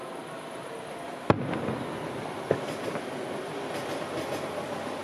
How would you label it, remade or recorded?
recorded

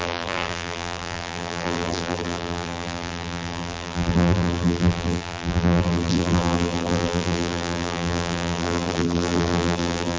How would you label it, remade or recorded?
remade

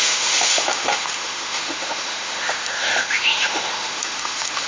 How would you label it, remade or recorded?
remade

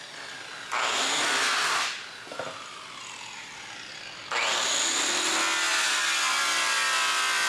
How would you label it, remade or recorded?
recorded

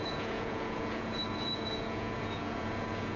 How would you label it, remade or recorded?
remade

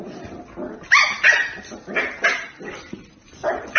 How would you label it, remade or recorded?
recorded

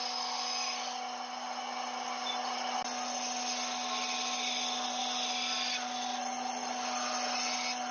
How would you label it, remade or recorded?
recorded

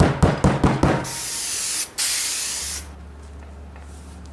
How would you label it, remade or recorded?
recorded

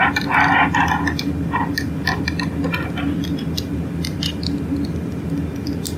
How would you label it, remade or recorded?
recorded